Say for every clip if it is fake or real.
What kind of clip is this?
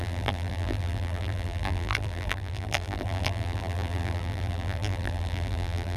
fake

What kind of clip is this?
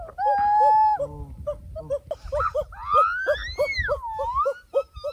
real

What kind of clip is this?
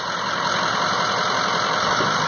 real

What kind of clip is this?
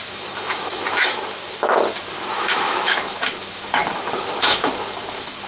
fake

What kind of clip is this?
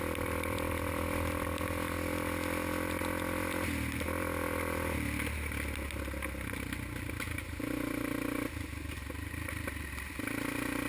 real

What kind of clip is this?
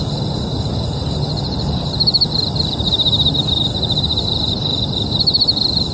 real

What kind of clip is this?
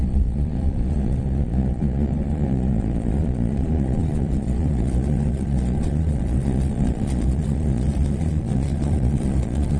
fake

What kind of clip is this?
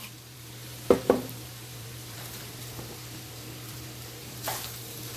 fake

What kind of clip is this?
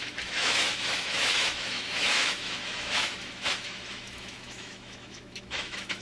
fake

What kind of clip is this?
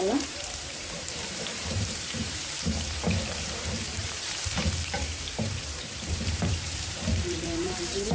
fake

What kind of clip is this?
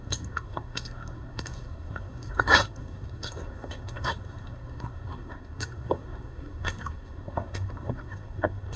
fake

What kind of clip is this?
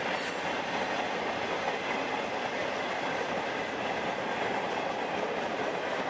real